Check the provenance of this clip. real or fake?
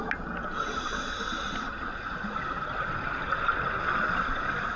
real